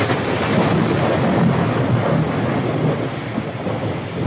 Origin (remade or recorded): recorded